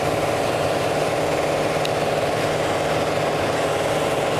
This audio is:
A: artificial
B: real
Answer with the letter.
B